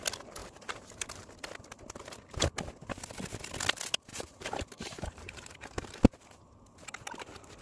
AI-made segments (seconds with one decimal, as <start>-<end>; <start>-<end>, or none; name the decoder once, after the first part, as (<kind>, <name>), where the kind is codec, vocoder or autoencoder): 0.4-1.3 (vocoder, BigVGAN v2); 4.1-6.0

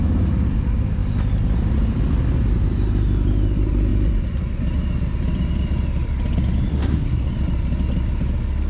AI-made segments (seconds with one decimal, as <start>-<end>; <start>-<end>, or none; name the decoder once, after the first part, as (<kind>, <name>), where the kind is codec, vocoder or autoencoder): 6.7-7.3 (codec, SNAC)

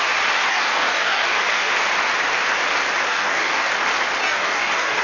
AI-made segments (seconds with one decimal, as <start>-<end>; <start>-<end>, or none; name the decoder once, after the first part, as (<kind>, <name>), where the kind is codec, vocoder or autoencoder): 0.5-1.7 (codec, DAC); 3.1-3.7; 4.2-5.0

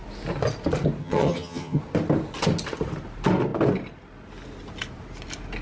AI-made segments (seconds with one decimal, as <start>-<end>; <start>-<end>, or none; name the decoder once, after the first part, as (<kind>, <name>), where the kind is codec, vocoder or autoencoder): 1.0-1.8 (vocoder, HiFi-GAN)